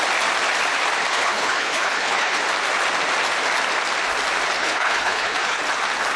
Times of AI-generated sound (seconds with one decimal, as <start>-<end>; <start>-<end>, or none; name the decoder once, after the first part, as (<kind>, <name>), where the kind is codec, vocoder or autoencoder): 1.1-2.4 (codec, HILCodec); 4.6-5.6